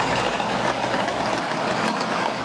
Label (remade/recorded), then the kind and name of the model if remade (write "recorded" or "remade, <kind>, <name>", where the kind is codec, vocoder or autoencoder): remade, codec, DAC